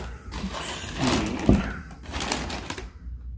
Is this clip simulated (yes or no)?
no